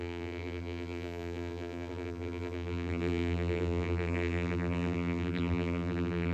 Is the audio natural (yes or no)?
no